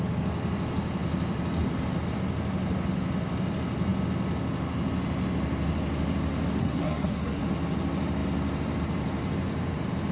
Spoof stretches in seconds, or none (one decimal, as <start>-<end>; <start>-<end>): 6.6-7.4